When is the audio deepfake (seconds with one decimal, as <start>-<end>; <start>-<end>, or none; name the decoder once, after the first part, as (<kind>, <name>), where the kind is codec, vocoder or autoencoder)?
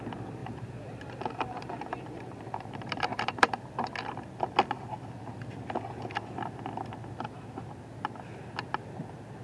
0.4-3.5 (vocoder, BigVGAN v2)